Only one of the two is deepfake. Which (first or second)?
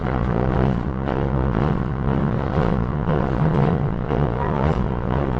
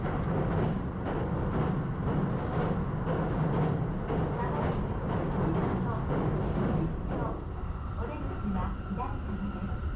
first